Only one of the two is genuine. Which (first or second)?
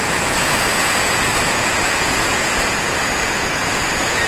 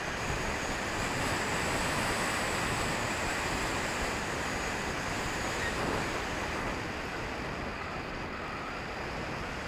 second